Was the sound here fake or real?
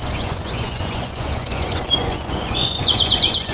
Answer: fake